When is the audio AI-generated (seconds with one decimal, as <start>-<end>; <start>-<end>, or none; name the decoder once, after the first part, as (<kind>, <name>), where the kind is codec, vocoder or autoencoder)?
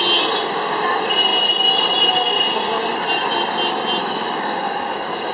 4.0-5.3 (autoencoder, DAC-VAE)